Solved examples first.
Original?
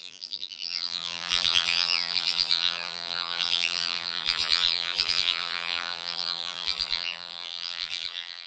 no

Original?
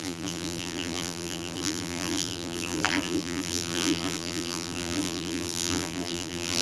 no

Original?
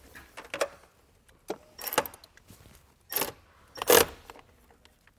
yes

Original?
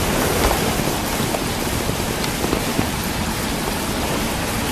no